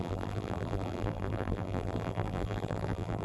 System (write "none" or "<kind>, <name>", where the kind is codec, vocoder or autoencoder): vocoder, BigVGAN v2